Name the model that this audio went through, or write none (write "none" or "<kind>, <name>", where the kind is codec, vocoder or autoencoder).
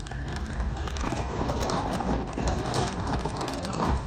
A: codec, DAC